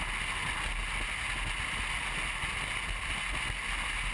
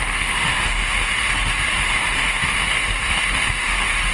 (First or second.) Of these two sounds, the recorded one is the first